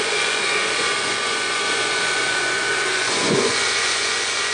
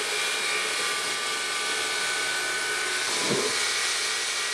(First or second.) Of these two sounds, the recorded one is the second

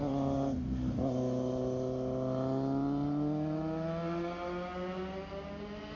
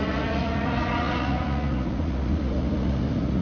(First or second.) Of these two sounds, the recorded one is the first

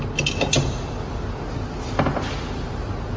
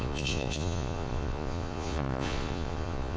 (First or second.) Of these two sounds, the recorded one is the first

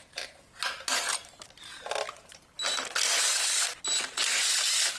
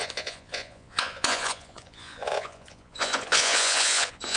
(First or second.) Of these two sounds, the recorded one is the first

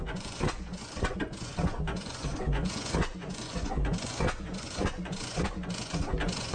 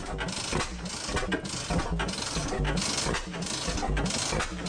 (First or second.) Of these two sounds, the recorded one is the second